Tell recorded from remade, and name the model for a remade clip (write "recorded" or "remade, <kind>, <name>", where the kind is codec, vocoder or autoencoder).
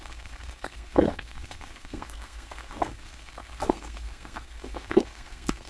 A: remade, codec, SNAC